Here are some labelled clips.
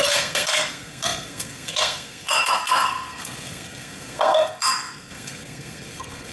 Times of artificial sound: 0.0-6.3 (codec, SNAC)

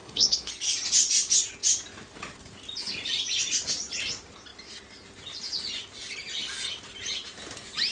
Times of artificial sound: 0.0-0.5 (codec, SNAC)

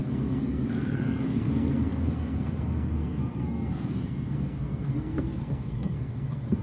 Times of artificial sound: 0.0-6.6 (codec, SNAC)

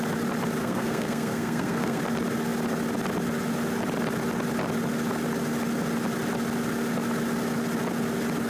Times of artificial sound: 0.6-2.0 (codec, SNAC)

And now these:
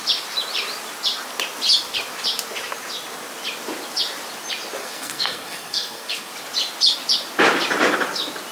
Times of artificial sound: 4.8-6.3 (codec, SNAC)

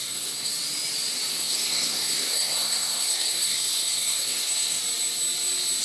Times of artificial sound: 0.0-0.5 (codec, SNAC); 1.3-4.8